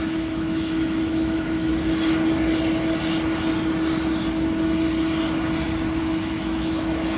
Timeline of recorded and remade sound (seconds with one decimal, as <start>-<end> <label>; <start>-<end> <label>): 0.0-1.7 remade; 1.7-6.0 recorded; 6.0-7.2 remade